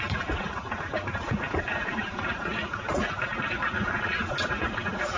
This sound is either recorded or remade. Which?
recorded